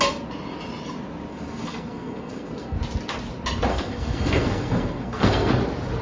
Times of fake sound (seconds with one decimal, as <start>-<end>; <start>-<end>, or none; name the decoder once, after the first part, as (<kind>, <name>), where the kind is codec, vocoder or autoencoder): 1.3-2.8 (codec, SNAC); 3.7-5.5